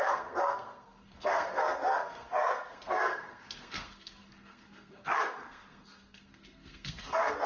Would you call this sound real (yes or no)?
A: no